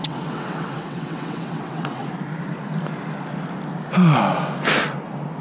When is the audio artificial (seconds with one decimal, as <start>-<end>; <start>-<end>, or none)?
0.0-2.0